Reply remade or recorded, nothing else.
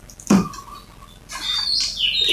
recorded